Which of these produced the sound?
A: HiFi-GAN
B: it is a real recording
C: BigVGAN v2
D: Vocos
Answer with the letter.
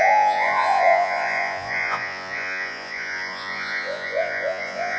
D